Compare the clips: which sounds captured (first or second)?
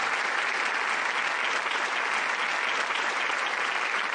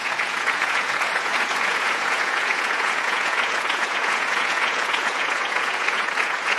first